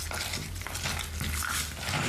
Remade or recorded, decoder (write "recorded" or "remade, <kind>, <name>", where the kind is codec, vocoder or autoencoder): recorded